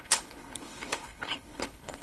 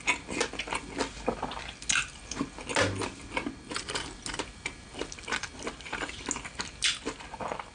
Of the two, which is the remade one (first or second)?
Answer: first